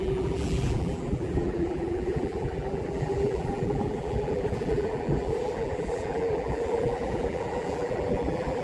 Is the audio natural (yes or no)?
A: no